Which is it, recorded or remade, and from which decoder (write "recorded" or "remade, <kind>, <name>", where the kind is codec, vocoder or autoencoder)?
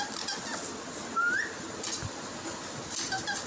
recorded